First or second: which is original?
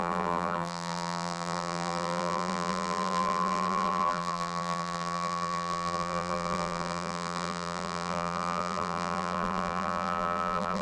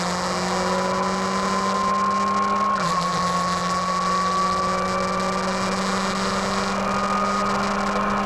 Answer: second